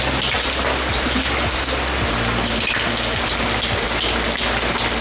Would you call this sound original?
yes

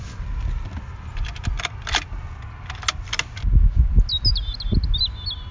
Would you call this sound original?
yes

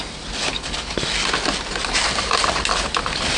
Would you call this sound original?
yes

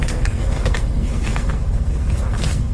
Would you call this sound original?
no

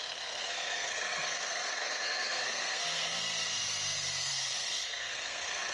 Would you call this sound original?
no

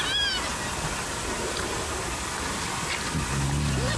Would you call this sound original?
yes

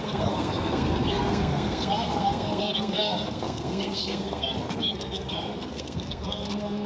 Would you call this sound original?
no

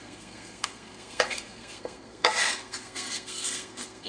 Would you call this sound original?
no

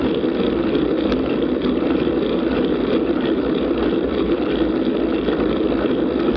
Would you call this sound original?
yes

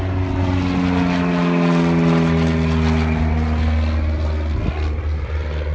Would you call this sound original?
yes